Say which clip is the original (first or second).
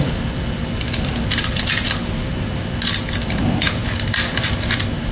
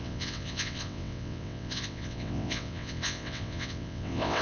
first